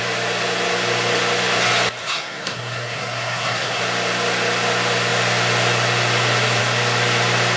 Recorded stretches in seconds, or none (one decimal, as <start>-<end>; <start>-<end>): 0.0-2.0; 3.8-7.6